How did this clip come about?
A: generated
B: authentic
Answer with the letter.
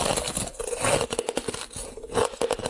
B